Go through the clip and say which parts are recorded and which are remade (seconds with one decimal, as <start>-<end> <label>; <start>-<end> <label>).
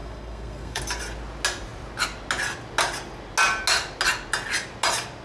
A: 0.0-0.8 remade; 0.8-5.2 recorded